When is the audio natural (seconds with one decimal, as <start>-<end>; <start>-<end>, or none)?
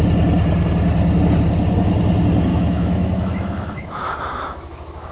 0.0-2.5